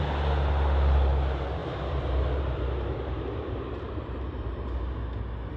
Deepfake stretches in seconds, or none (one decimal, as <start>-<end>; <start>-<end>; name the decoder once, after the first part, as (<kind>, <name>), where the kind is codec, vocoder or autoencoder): 1.6-5.0 (vocoder, BigVGAN v2)